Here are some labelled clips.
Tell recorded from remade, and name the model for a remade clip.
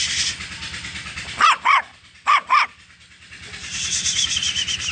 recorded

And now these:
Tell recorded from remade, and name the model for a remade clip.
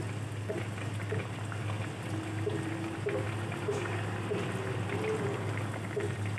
recorded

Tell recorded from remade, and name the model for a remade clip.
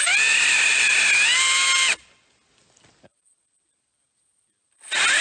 recorded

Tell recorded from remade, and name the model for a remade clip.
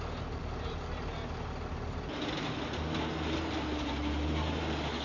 recorded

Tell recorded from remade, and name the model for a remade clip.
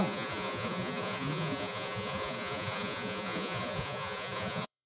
remade, vocoder, Vocos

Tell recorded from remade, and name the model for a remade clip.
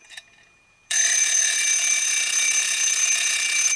remade, vocoder, Vocos